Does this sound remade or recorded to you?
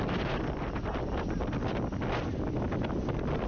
recorded